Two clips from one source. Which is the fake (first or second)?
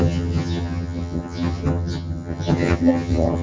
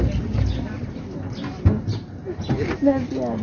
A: first